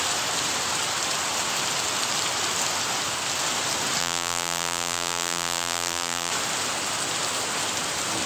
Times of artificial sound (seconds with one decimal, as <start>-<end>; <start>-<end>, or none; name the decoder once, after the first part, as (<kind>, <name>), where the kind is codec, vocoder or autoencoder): 4.0-6.3 (vocoder, BigVGAN v2)